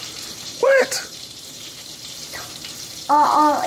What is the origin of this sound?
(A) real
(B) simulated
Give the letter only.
B